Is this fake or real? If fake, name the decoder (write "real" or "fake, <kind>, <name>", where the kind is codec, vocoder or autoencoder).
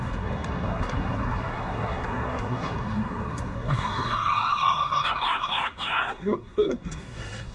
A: fake, codec, SNAC